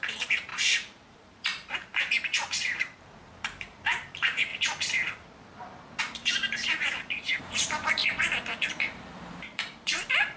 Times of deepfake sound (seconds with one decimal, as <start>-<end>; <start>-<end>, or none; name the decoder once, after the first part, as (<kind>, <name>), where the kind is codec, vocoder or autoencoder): 0.0-4.5 (vocoder, BigVGAN v2); 6.0-8.0; 8.7-10.4